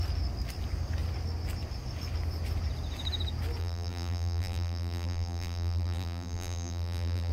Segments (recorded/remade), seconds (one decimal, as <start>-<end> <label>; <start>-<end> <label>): 0.0-3.6 recorded; 3.6-7.3 remade